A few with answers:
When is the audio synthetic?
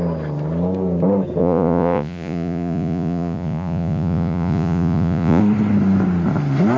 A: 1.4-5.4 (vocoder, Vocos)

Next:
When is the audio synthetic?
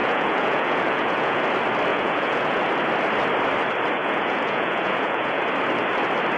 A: 0.0-1.4 (vocoder, Vocos); 1.9-2.6; 4.0-5.4